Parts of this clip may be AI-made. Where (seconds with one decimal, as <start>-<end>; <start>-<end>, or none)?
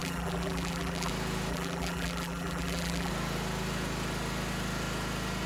0.0-1.1; 1.5-3.1